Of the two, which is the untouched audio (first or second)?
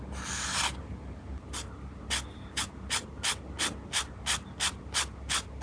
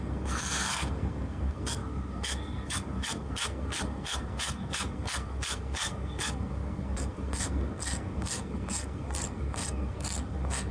first